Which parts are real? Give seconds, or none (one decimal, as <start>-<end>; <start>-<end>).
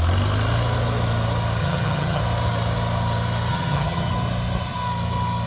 0.0-1.6; 2.2-3.5; 4.1-5.5